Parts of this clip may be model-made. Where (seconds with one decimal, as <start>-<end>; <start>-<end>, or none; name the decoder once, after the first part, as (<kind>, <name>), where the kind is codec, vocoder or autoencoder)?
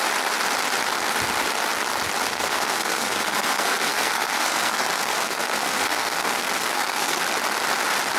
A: 2.3-7.2 (codec, SNAC)